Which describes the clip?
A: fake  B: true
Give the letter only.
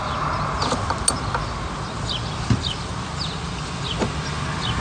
B